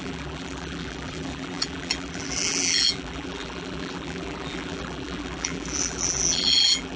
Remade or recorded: remade